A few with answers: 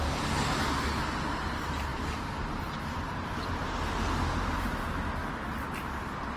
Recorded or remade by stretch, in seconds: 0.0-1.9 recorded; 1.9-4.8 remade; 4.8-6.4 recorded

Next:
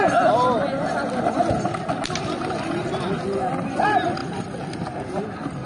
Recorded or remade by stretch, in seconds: 0.0-5.7 recorded

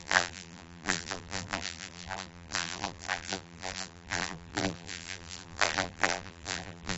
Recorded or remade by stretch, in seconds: 0.0-7.0 remade

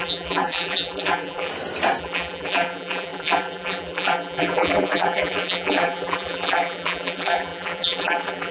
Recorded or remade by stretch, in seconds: 0.0-1.5 remade; 1.5-2.0 recorded; 2.0-8.5 remade